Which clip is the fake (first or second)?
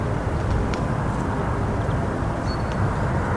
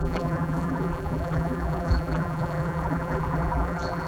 second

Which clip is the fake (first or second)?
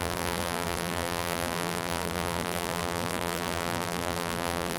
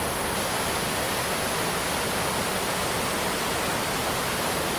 first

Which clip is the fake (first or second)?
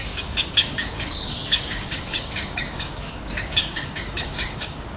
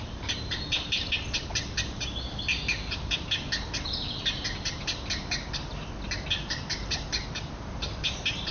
first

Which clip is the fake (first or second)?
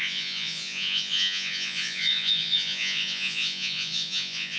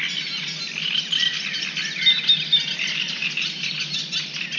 first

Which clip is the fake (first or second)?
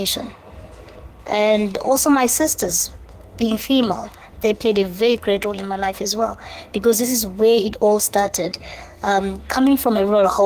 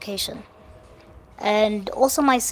first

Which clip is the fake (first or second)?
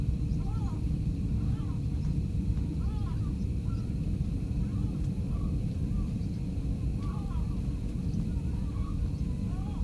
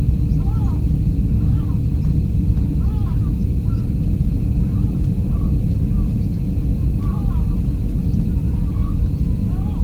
first